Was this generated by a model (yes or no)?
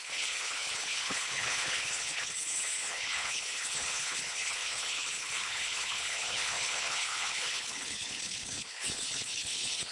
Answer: yes